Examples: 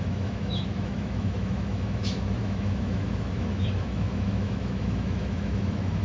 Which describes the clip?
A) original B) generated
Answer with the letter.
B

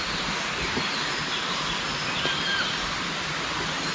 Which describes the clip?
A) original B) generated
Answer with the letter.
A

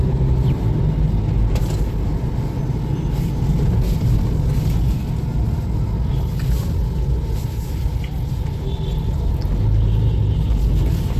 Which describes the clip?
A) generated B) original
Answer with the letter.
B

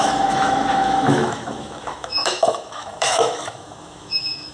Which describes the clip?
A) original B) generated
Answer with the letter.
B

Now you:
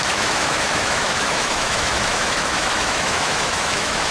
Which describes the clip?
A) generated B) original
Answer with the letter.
A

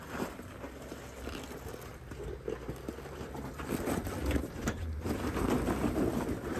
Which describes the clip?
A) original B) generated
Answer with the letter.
A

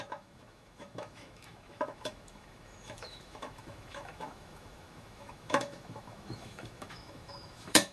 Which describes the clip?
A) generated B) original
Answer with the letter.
A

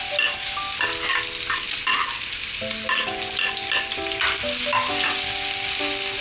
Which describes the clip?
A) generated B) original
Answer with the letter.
B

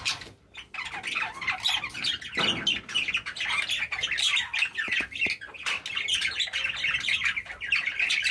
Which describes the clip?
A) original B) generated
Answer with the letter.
A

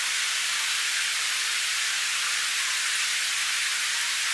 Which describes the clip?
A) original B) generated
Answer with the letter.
A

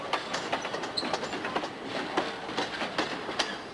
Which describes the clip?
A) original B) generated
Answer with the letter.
A